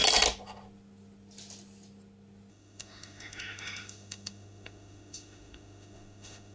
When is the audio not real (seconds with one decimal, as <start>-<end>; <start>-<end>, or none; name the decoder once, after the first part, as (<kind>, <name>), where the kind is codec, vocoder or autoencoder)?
2.5-6.5 (autoencoder, DAC-VAE)